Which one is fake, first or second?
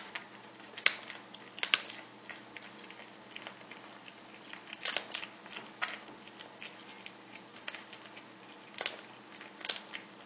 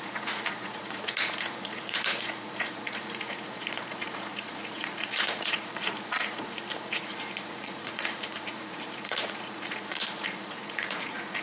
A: second